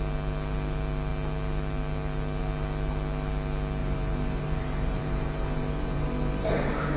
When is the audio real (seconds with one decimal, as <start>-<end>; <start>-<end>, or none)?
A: 0.0-3.8